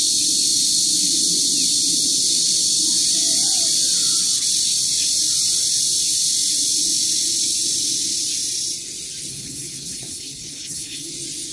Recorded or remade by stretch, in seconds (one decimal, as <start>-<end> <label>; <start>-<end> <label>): 0.0-9.3 recorded; 9.3-11.1 remade; 11.1-11.5 recorded